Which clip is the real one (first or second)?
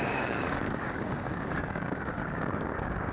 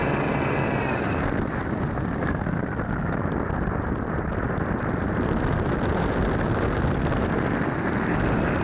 second